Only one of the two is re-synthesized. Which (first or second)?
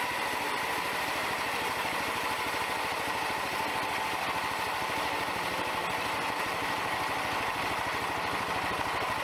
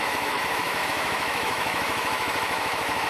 second